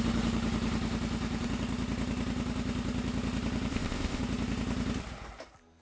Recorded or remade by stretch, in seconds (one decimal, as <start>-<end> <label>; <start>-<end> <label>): 0.0-3.7 recorded; 3.7-4.2 remade; 4.2-5.8 recorded